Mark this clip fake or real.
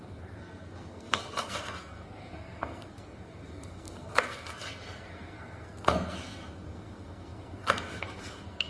fake